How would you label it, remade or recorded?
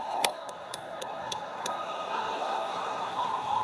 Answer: remade